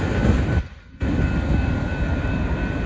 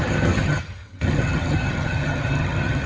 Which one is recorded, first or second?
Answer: first